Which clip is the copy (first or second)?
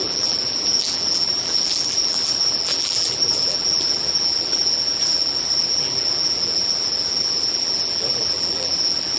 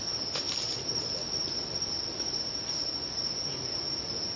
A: first